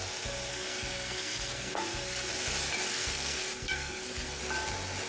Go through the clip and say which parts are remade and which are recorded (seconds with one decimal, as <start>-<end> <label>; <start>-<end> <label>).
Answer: 0.0-0.5 recorded; 0.5-2.3 remade; 2.3-2.9 recorded; 2.9-4.4 remade; 4.4-5.1 recorded